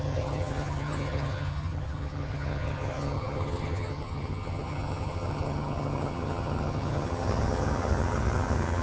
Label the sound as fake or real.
fake